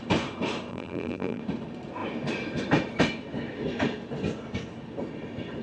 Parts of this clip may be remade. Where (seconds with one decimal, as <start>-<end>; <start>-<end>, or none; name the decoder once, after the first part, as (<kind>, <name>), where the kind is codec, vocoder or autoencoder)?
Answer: 0.7-1.4 (vocoder, BigVGAN v2)